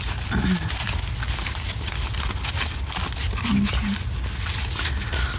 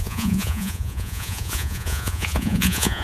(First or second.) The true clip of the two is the first